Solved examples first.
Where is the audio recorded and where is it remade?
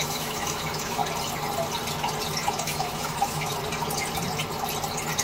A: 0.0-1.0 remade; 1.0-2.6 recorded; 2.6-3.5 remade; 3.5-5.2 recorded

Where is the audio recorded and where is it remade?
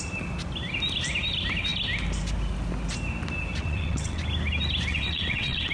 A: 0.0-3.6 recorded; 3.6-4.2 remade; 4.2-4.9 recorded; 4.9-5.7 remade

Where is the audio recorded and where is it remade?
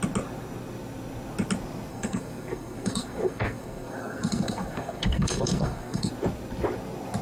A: 0.0-1.9 recorded; 1.9-6.1 remade; 6.1-7.2 recorded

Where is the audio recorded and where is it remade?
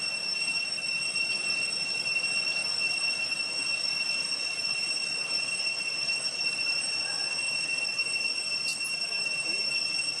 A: 0.0-8.7 recorded; 8.7-9.7 remade; 9.7-10.2 recorded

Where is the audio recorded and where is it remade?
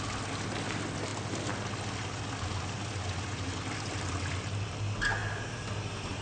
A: 0.0-6.2 recorded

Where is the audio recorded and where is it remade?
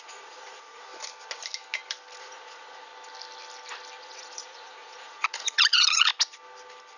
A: 0.0-0.9 remade; 0.9-2.2 recorded; 2.2-2.9 remade; 2.9-4.0 recorded; 4.0-6.1 remade; 6.1-7.0 recorded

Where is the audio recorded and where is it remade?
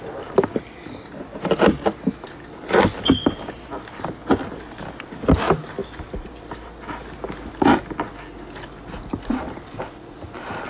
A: 0.0-10.7 recorded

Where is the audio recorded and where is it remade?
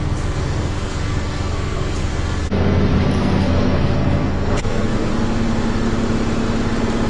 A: 0.0-2.1 remade; 2.1-3.2 recorded; 3.2-5.1 remade; 5.1-7.1 recorded